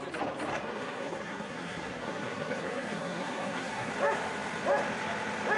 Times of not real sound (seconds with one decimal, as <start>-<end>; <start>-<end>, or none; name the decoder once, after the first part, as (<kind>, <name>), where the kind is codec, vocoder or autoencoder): 0.5-3.9 (codec, SNAC)